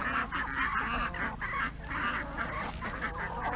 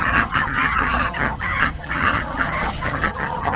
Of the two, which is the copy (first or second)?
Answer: second